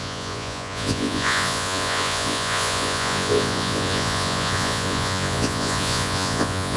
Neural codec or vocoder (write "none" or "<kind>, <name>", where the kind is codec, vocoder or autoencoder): vocoder, Vocos